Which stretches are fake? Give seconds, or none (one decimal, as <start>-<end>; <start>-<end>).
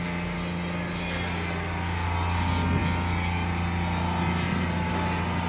none